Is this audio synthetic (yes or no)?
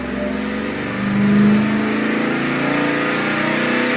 no